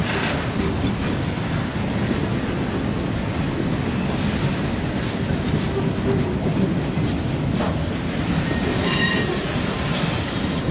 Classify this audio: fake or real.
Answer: real